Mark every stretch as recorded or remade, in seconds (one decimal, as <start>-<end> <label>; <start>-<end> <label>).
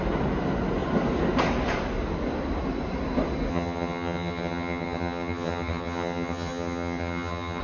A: 0.0-3.5 recorded; 3.5-7.6 remade